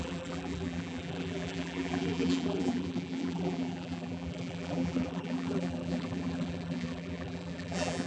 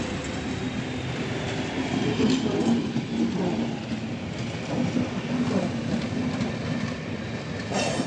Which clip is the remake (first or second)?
first